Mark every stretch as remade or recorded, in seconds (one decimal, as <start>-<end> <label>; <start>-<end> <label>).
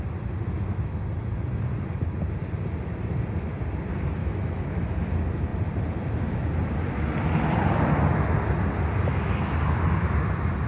0.0-4.2 recorded; 4.2-5.1 remade; 5.1-10.7 recorded